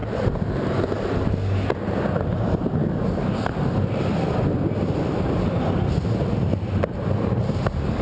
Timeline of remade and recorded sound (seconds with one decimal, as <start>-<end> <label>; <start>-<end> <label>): 0.0-8.0 recorded